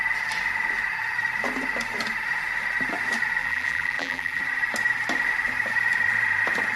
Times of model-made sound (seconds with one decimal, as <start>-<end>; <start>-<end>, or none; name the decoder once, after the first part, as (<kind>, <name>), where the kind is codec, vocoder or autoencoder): 3.4-4.4 (vocoder, BigVGAN v2)